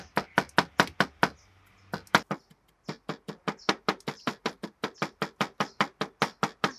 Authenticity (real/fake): real